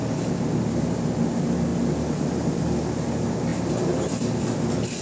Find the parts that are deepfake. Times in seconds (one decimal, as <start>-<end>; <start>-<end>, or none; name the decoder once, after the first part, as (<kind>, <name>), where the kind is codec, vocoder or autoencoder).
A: none